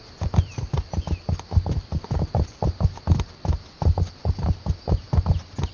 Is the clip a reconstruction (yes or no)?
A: no